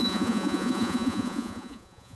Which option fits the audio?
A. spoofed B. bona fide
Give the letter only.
A